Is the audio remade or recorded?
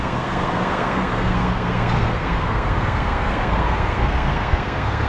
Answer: remade